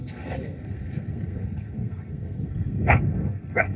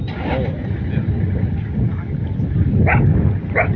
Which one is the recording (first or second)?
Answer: second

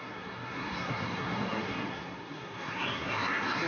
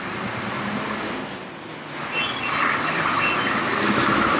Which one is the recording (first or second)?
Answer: second